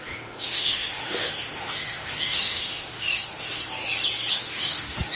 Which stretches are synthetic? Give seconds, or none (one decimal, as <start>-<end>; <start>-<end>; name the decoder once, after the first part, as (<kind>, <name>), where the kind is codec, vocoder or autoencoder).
0.0-3.6 (autoencoder, DAC-VAE); 4.3-5.2